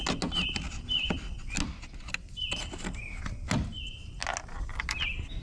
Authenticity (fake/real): real